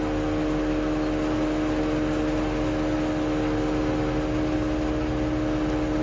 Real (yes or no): yes